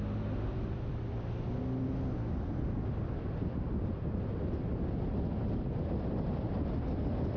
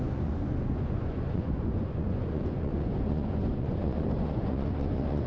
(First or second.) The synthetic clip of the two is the second